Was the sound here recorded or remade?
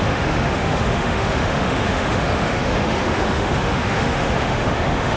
remade